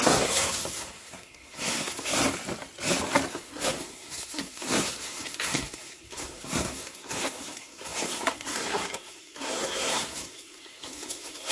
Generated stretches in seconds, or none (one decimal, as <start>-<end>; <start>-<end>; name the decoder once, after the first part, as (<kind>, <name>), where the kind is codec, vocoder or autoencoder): 0.0-2.1 (codec, SNAC); 3.3-11.5